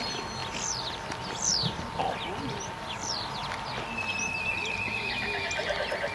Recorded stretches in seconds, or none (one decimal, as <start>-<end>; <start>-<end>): 0.0-6.1